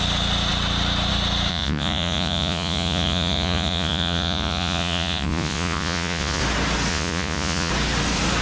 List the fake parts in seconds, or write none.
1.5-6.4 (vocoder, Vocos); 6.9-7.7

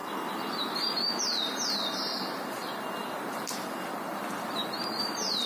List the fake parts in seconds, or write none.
1.2-5.5 (vocoder, BigVGAN v2)

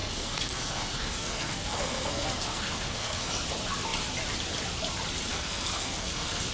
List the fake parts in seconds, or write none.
0.0-3.3 (codec, SNAC); 5.3-6.5